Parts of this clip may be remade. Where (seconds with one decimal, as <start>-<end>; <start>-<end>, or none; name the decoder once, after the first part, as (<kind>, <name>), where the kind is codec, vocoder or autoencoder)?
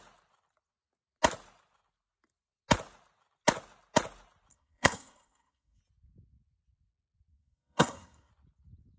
4.5-5.8 (codec, SNAC); 7.3-8.3